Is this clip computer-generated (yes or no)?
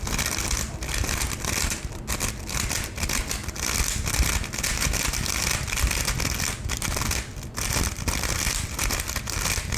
no